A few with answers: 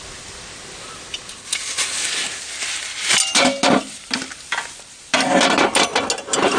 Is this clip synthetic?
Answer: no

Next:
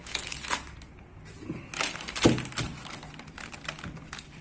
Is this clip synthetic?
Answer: no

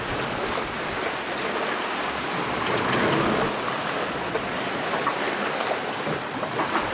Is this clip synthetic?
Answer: no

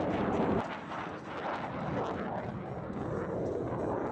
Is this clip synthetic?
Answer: no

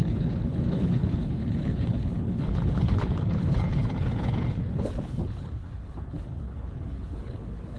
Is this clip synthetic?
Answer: yes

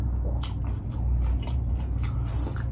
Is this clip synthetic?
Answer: no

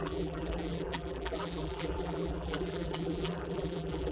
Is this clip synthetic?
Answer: yes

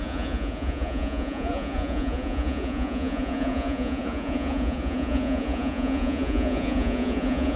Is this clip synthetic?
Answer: yes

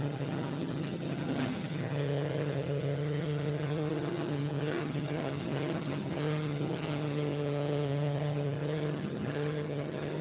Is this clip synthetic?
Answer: yes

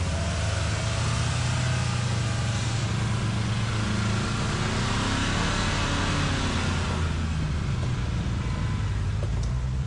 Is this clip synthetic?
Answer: no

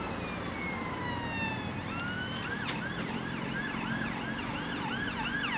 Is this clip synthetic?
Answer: no